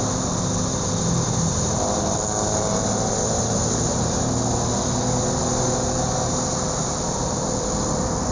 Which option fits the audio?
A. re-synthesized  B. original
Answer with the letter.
B